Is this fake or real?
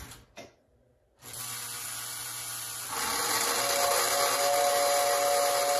real